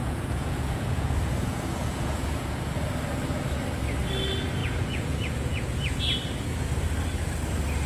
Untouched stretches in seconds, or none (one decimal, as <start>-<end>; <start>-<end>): 2.6-4.6; 6.0-7.9